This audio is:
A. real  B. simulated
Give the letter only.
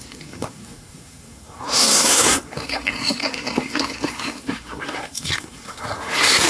B